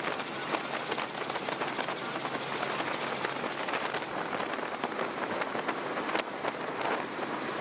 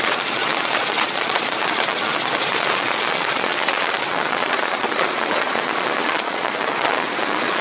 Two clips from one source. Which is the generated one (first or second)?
second